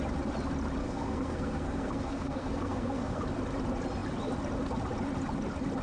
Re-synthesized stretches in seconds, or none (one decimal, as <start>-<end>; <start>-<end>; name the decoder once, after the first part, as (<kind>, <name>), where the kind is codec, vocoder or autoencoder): 0.8-3.2 (codec, SNAC)